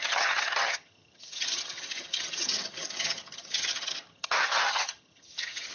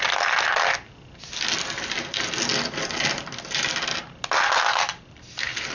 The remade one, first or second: first